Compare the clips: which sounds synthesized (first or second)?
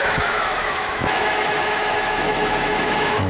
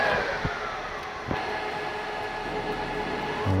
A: first